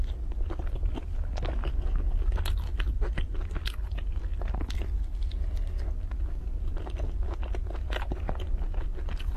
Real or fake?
real